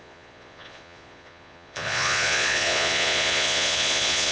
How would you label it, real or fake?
fake